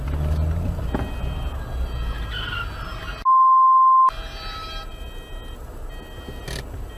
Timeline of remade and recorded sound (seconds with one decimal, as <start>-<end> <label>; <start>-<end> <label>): 0.0-7.0 recorded